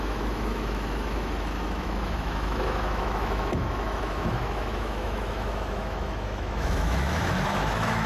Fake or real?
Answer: fake